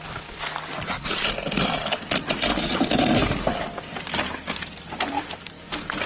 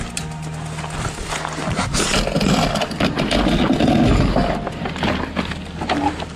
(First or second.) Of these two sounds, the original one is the second